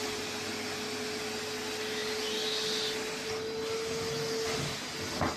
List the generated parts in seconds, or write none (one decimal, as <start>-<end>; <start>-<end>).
none